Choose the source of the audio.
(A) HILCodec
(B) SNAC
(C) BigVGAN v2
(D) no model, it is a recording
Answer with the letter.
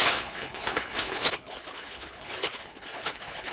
A